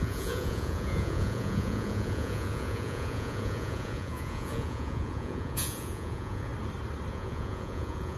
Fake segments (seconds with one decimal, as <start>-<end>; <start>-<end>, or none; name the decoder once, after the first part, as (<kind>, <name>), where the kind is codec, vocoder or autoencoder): 0.0-6.5 (vocoder, Vocos); 7.1-8.2